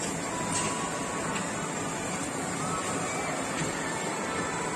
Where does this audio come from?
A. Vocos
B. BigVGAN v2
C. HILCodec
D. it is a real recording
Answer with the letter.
D